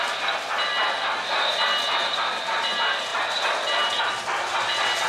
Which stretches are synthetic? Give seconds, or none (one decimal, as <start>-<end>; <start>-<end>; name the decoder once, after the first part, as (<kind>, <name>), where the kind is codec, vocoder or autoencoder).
3.1-3.9 (vocoder, BigVGAN v2)

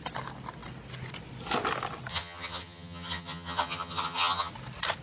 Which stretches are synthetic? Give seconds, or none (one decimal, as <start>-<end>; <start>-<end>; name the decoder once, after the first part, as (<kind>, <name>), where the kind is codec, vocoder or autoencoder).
2.1-4.5 (vocoder, HiFi-GAN)

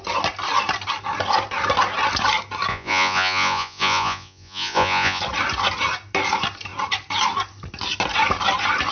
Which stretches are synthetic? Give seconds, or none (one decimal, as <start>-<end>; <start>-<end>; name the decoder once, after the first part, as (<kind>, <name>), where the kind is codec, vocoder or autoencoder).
2.7-5.2 (vocoder, Vocos)